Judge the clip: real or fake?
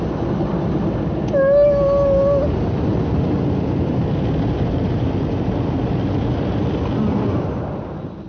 real